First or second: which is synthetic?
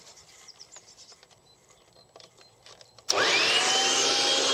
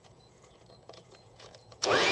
second